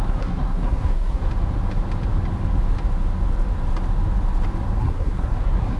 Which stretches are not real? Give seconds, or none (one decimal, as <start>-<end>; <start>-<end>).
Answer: 0.0-1.3; 4.8-5.8